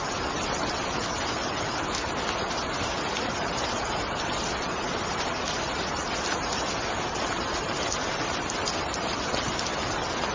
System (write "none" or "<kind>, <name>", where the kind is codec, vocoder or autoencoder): none